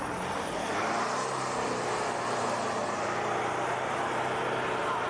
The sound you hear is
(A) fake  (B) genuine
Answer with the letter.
B